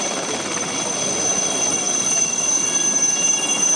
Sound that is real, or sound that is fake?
real